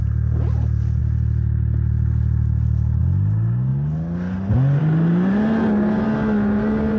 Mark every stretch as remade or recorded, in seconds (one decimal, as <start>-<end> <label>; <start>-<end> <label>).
0.0-7.0 recorded